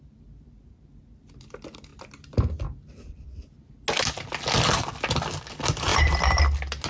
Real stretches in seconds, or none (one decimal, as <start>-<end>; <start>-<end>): 0.0-5.9; 6.4-6.9